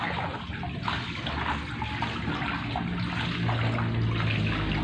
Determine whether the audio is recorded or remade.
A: recorded